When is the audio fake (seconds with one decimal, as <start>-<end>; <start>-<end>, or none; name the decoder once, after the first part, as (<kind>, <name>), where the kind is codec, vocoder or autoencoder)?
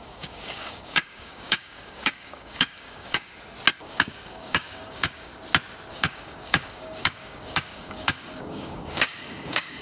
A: 0.0-3.3 (codec, DAC); 3.8-5.3; 5.9-9.8